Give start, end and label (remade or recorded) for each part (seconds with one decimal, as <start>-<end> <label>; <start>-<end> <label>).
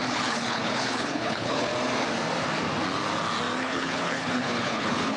0.0-1.7 remade; 1.7-3.6 recorded; 3.6-5.2 remade